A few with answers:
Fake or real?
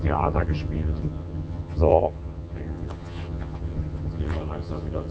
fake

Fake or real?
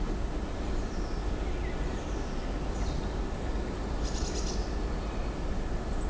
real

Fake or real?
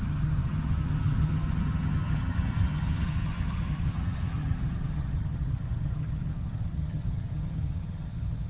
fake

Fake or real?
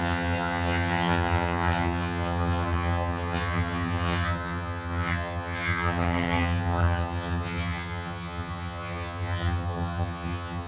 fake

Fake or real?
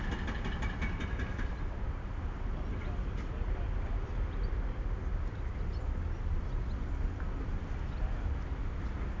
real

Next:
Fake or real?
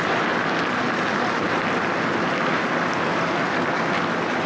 real